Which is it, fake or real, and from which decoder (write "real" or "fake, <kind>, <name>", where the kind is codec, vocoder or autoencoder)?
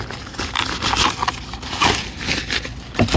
real